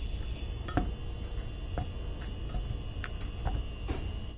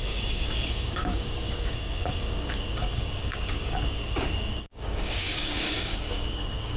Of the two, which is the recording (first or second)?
first